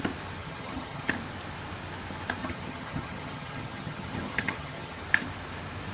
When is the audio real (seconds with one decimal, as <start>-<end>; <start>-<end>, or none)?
0.0-0.4; 1.1-2.4; 5.0-5.9